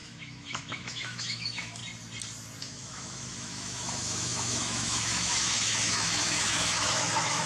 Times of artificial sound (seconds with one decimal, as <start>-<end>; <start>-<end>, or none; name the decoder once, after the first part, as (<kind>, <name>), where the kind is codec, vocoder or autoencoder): 0.0-1.8 (autoencoder, DAC-VAE); 2.6-7.5